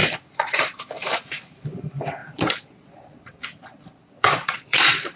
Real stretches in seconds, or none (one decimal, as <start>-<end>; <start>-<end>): 0.8-2.2; 3.3-3.7